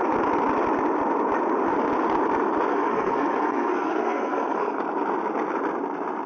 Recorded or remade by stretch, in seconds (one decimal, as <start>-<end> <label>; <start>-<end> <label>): 0.0-2.7 recorded; 2.7-4.8 remade; 4.8-6.3 recorded

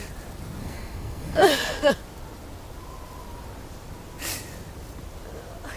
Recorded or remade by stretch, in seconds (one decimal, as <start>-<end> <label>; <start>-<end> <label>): 0.0-0.6 recorded; 0.6-1.9 remade; 1.9-5.8 recorded

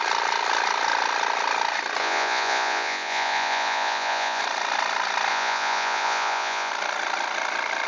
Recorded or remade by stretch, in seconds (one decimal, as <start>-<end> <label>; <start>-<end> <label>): 0.0-2.0 recorded; 2.0-4.4 remade; 4.4-5.3 recorded; 5.3-6.7 remade; 6.7-7.9 recorded

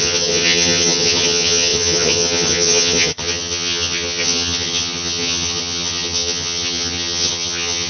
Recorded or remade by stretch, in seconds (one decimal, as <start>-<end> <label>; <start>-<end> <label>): 0.0-7.9 remade

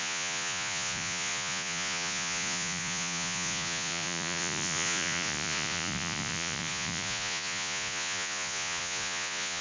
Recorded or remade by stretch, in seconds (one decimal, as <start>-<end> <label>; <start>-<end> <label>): 0.0-9.6 remade

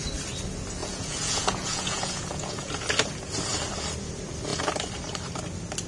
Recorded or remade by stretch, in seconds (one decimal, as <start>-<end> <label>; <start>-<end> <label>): 0.0-0.8 recorded; 0.8-2.7 remade; 2.7-5.9 recorded